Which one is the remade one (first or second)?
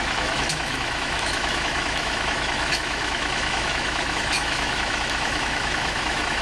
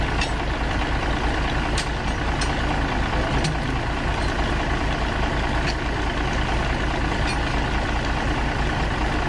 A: first